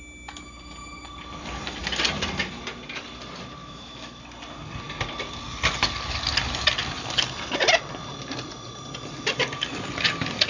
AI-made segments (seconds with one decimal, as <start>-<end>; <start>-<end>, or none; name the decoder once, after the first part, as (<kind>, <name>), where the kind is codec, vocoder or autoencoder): 3.6-4.2 (autoencoder, DAC-VAE)